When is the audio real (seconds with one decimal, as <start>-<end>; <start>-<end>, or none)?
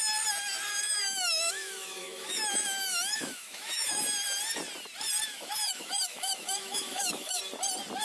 0.0-0.7; 4.0-5.3; 7.4-8.0